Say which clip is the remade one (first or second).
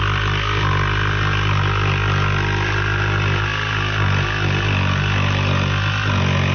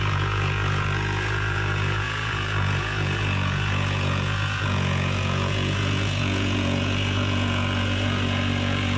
second